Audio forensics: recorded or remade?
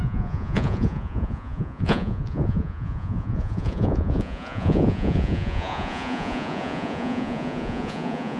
remade